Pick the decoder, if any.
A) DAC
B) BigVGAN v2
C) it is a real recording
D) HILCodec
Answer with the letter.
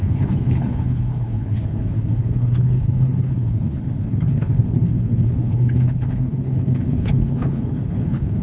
D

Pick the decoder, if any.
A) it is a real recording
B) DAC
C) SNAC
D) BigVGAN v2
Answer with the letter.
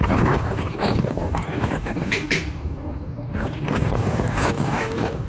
B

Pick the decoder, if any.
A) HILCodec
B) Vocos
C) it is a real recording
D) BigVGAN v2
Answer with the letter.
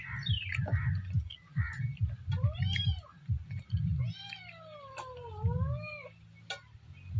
C